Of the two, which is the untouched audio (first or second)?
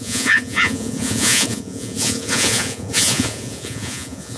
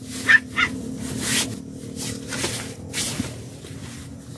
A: second